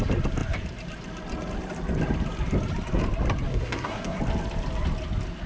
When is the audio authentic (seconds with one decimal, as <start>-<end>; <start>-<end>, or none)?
0.0-3.5; 4.2-5.5